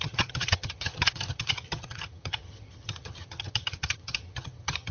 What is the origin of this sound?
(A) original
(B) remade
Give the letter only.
B